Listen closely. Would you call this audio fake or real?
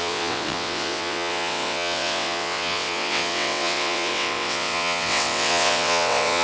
fake